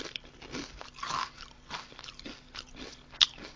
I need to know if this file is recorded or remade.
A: recorded